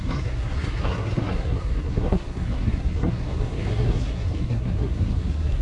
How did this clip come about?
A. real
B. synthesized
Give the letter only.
B